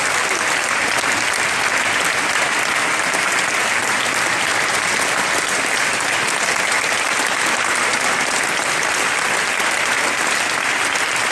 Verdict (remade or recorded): recorded